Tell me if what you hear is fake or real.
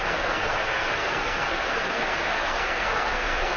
fake